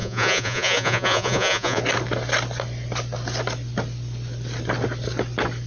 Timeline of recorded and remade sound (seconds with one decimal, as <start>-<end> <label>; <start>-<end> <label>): 0.0-1.8 remade; 1.8-5.7 recorded